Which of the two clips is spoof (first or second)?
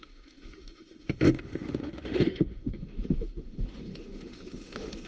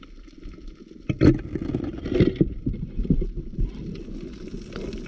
first